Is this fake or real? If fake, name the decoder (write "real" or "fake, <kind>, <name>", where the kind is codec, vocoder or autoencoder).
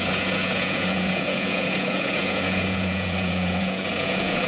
fake, vocoder, Vocos